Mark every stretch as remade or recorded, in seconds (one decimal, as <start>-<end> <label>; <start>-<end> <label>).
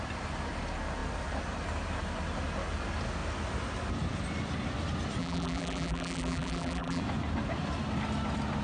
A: 0.0-5.2 recorded; 5.2-7.0 remade; 7.0-8.6 recorded